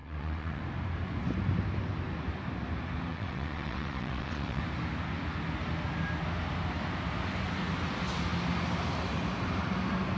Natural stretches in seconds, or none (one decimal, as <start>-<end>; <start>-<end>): 0.6-3.1; 4.6-10.2